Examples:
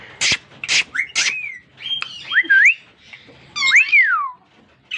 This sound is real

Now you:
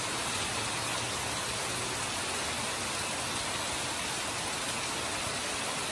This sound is real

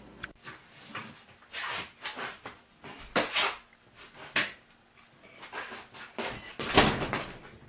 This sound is real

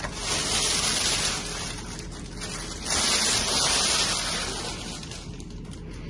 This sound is real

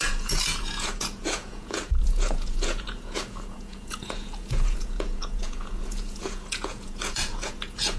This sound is fake